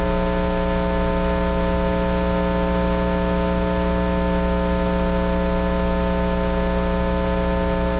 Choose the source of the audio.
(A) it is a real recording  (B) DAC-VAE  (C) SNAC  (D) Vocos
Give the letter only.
A